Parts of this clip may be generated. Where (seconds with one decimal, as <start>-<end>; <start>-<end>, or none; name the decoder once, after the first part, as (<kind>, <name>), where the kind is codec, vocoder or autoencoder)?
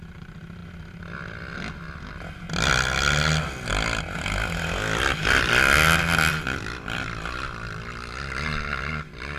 none